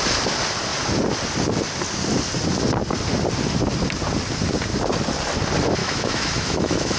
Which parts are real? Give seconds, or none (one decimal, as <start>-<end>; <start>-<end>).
0.0-5.8